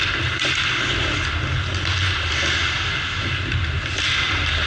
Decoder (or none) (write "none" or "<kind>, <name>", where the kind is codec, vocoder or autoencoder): none